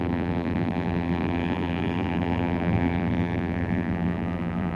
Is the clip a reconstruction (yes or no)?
yes